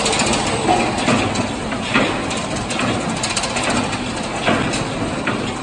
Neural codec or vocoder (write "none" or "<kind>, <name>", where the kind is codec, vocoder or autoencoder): none